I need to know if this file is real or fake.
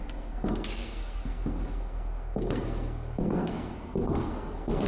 fake